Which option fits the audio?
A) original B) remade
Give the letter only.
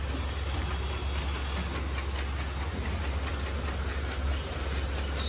A